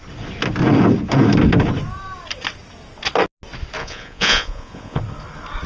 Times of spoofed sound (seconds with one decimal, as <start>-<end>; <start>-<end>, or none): 3.8-5.0